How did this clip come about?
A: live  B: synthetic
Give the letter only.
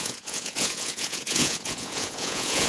B